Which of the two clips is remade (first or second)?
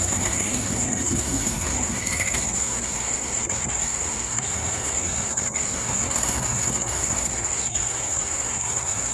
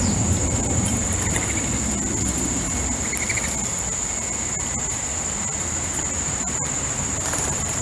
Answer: first